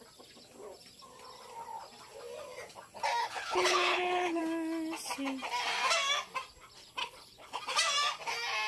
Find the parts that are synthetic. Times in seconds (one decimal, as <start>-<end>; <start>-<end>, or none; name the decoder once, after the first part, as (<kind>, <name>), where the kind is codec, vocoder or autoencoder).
3.2-4.4 (codec, HILCodec); 7.0-7.6